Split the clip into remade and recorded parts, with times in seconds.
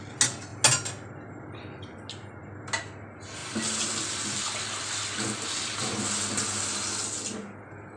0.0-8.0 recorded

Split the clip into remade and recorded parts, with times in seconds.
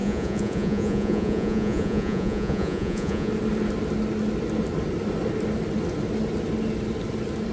0.0-3.3 remade; 3.3-7.5 recorded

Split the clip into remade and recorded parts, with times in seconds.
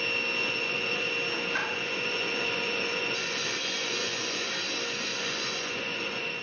0.0-0.4 recorded; 0.4-1.1 remade; 1.1-1.6 recorded; 1.6-4.5 remade; 4.5-5.1 recorded; 5.1-6.4 remade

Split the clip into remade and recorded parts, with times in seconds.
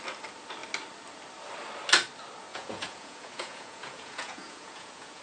0.0-2.5 recorded; 2.5-5.2 remade